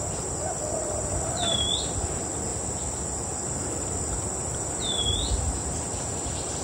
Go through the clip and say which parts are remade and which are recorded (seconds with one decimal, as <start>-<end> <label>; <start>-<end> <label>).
0.0-6.6 recorded